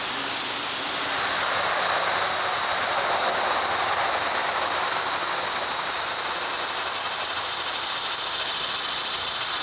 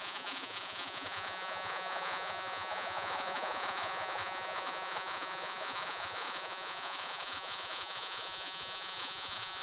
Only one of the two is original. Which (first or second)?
first